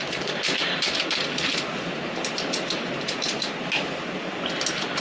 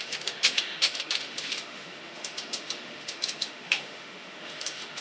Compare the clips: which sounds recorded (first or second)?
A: first